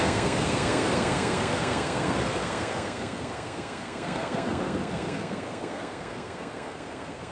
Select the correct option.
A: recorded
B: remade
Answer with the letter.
B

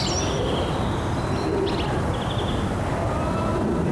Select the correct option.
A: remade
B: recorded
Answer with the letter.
B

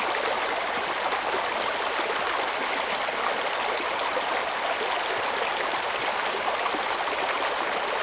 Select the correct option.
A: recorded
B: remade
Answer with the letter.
A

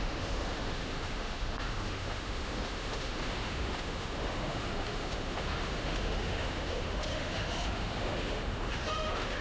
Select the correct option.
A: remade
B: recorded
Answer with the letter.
A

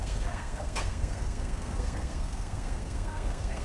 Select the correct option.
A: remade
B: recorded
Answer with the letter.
A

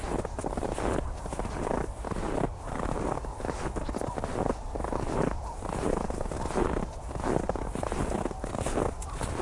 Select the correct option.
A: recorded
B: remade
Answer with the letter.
A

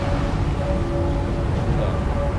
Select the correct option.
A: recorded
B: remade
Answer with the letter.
A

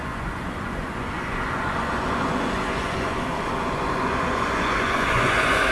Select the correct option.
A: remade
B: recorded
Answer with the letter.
A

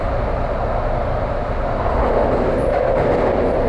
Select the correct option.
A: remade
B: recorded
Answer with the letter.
B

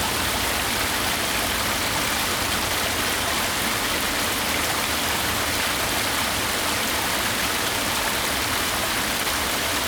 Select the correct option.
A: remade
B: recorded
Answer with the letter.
B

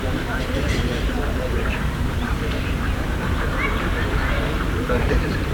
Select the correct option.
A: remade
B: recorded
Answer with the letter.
A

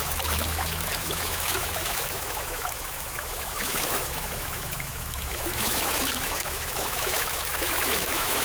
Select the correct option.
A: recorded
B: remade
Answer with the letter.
B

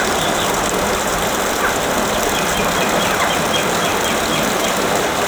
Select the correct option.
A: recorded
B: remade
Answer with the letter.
A